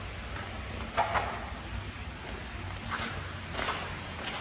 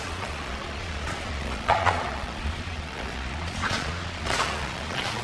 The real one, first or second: first